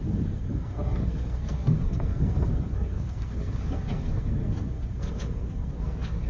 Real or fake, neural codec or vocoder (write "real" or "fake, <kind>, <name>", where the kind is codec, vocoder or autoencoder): fake, codec, SNAC